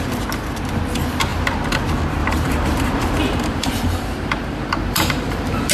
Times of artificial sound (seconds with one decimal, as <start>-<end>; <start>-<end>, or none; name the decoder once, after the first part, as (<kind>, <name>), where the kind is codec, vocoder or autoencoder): 1.3-1.8 (vocoder, BigVGAN v2); 2.2-5.7